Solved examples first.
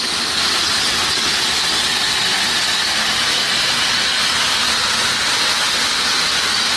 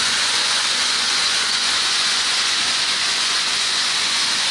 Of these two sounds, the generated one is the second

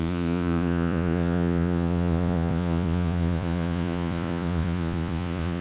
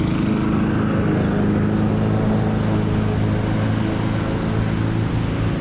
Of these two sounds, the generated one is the first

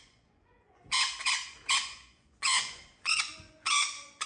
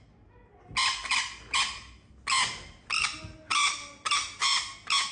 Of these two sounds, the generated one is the first